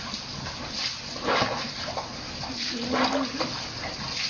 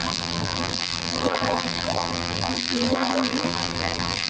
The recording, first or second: first